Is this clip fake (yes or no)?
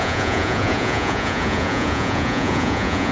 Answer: yes